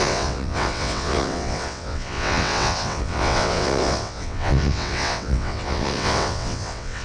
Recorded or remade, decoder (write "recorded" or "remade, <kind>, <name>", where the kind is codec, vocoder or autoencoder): remade, vocoder, WaveNeXt